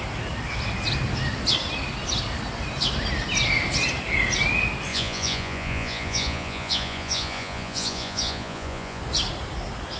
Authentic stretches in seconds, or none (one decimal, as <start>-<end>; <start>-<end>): 0.0-4.9; 9.0-10.0